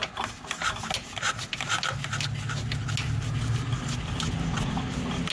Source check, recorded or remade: recorded